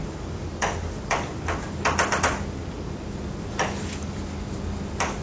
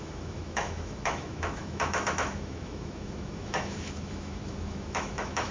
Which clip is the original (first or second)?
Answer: first